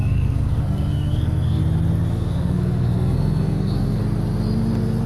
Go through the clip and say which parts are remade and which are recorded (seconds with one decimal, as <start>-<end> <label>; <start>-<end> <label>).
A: 0.0-1.6 remade; 1.6-2.1 recorded; 2.1-4.0 remade; 4.0-5.1 recorded